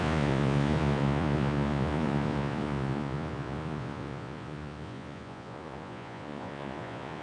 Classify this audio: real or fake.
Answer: fake